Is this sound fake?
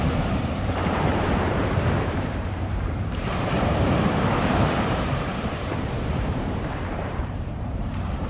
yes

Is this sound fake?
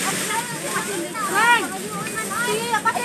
no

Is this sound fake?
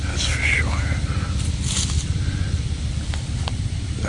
no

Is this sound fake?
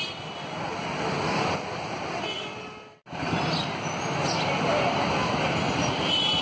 no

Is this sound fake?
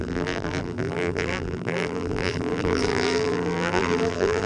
yes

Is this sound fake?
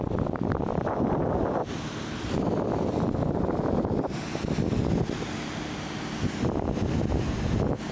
no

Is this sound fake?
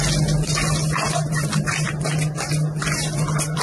no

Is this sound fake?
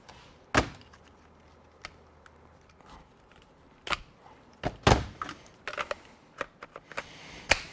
no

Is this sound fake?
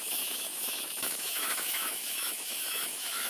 yes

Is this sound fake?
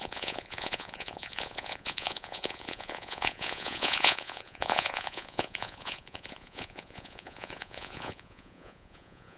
yes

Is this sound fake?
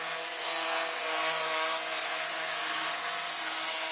yes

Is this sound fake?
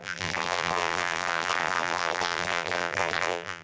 yes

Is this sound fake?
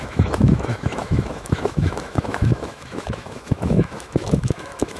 yes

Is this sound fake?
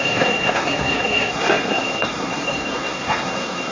yes